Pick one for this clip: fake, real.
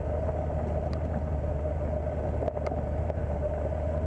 real